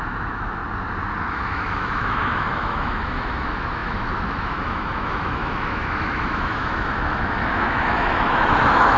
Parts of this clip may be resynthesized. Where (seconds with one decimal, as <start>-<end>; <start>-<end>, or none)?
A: 0.0-0.6; 1.3-9.0